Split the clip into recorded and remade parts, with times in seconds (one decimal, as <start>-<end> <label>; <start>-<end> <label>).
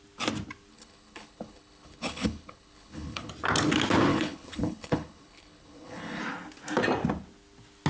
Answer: 0.0-0.7 recorded; 0.7-3.3 remade; 3.3-4.1 recorded; 4.1-6.2 remade; 6.2-7.9 recorded